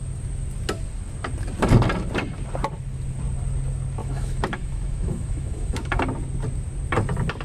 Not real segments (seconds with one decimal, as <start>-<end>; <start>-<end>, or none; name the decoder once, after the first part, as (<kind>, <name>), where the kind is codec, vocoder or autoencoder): 4.0-6.0 (autoencoder, DAC-VAE)